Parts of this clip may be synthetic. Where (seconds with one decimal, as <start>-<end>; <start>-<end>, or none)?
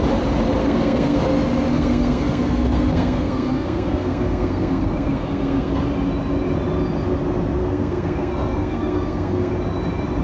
0.6-1.2; 1.7-5.8; 7.6-9.5